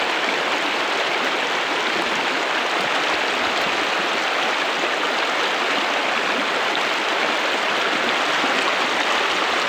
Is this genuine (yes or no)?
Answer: yes